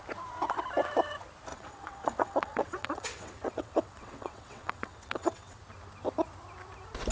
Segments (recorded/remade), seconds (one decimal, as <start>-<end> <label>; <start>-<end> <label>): 0.0-1.5 recorded; 1.5-5.6 remade; 5.6-7.1 recorded

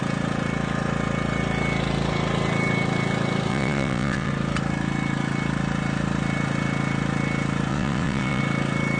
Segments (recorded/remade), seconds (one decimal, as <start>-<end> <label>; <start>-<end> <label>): 0.0-3.5 recorded; 3.5-4.3 remade; 4.3-7.7 recorded; 7.7-8.4 remade; 8.4-9.0 recorded

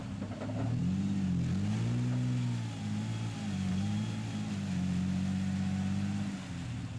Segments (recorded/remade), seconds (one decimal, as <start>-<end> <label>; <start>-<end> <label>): 0.0-7.0 recorded

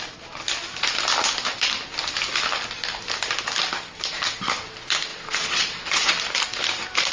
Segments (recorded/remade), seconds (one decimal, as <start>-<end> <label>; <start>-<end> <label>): 0.0-5.1 recorded; 5.1-6.1 remade; 6.1-7.1 recorded

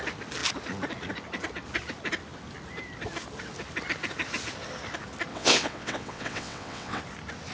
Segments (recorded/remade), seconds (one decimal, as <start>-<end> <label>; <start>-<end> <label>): 0.0-5.3 recorded; 5.3-7.0 remade; 7.0-7.5 recorded

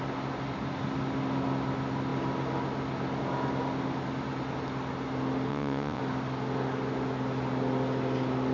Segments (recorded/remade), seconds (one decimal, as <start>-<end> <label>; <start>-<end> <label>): 0.0-5.5 recorded; 5.5-6.0 remade; 6.0-8.5 recorded

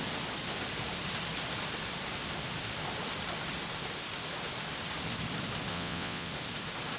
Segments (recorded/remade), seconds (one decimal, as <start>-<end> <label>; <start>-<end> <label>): 0.0-5.7 recorded; 5.7-6.3 remade; 6.3-7.0 recorded